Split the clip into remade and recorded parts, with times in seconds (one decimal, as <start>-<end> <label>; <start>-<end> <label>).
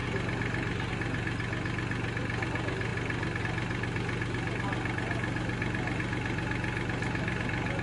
0.0-7.8 recorded